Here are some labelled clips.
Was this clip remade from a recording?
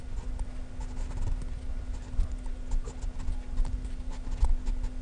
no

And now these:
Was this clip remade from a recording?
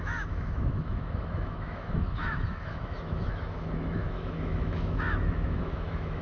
yes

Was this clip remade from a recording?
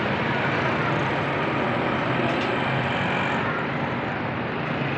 no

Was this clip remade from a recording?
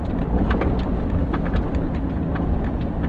no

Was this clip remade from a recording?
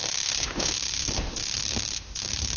yes